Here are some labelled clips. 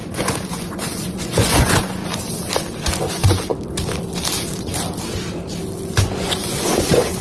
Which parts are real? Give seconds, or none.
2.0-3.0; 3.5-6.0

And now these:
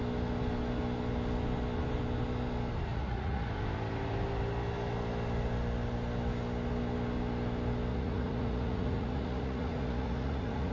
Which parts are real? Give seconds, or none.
0.0-2.9; 3.5-7.9

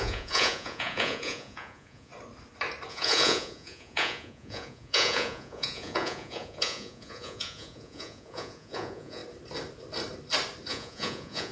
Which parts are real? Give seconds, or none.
2.1-2.9; 9.2-10.7

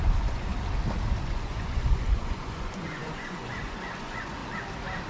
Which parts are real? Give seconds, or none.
0.5-1.2; 4.4-5.1

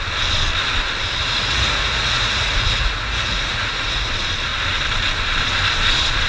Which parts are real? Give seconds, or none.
0.0-1.2; 4.1-6.3

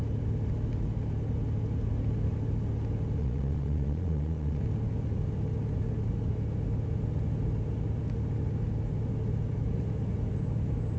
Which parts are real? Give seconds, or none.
0.0-3.2; 4.6-11.0

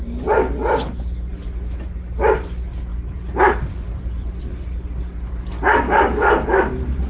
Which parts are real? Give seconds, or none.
0.0-7.1

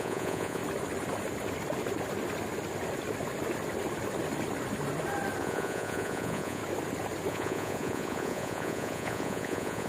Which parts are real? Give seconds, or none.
0.6-5.4; 6.6-7.3